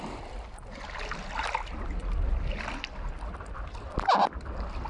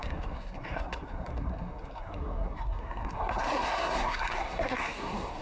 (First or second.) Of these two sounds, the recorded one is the first